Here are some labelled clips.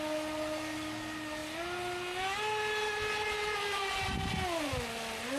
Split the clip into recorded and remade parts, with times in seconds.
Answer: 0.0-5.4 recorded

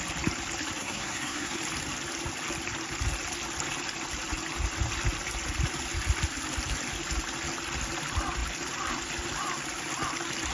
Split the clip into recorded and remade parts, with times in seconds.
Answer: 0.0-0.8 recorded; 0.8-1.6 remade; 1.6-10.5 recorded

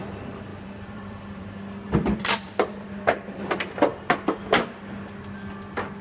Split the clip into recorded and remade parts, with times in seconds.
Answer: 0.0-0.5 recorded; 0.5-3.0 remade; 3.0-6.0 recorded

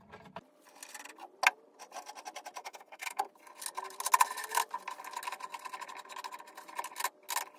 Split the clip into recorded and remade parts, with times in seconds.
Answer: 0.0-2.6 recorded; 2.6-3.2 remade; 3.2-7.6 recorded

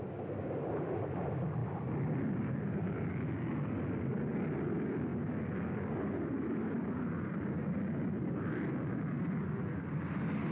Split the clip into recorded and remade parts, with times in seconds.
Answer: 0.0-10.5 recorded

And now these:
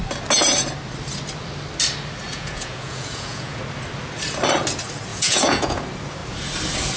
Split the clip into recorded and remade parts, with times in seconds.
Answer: 0.0-2.3 recorded; 2.3-3.6 remade; 3.6-5.1 recorded; 5.1-5.8 remade; 5.8-7.0 recorded